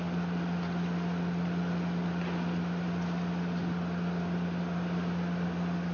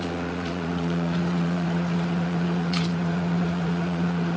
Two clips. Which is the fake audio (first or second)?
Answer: second